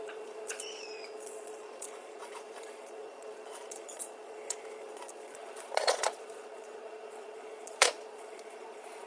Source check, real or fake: fake